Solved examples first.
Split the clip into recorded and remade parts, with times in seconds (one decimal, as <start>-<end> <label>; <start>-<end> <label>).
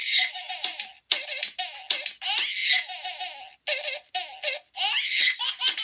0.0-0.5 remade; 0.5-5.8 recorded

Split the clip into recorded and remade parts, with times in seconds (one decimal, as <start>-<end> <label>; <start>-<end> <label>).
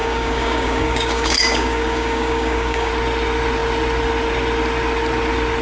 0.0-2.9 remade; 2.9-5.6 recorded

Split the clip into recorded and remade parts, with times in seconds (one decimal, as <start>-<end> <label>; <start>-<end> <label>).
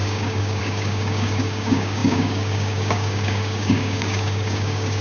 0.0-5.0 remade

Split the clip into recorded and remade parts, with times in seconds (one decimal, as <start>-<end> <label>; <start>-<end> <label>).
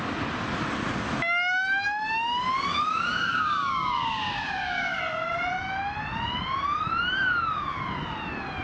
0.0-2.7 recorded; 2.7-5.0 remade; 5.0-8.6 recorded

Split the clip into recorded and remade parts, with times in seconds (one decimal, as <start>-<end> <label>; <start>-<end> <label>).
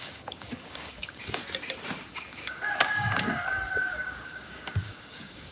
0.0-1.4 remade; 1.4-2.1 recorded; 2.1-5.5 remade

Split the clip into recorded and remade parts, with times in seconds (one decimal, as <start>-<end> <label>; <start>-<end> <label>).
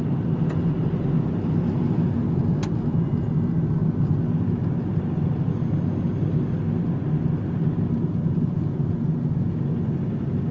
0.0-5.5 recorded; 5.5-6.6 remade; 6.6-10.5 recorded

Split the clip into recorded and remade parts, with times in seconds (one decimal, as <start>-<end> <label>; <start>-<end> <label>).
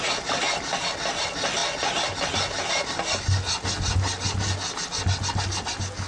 0.0-6.1 recorded